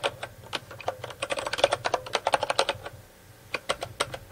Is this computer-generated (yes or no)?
no